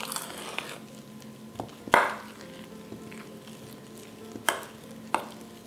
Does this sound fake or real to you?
real